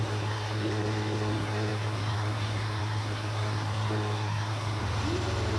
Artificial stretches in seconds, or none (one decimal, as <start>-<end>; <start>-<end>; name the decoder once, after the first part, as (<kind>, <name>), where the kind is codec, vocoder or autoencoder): 0.0-4.8 (codec, SNAC)